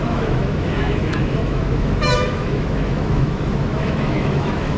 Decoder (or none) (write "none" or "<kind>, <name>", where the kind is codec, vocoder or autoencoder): autoencoder, DAC-VAE